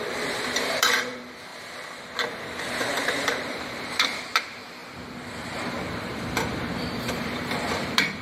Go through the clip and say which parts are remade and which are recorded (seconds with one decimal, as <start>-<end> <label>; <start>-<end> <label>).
0.0-1.5 remade; 1.5-3.0 recorded; 3.0-4.8 remade; 4.8-5.7 recorded; 5.7-8.2 remade